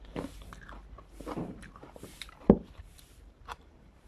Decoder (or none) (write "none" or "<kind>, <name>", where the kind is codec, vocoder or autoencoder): vocoder, BigVGAN v2